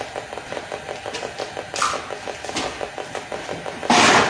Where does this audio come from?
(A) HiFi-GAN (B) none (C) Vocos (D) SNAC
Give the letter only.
B